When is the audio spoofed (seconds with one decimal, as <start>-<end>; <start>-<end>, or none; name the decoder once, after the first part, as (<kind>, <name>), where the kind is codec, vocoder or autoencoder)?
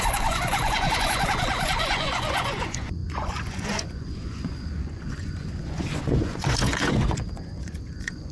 0.0-8.3 (vocoder, Vocos)